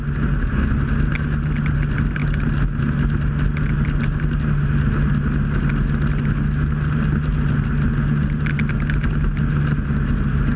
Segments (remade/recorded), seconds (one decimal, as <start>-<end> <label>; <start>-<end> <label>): 0.0-10.6 recorded